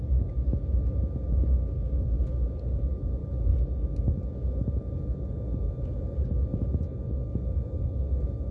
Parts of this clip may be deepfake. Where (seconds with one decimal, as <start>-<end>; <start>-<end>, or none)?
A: none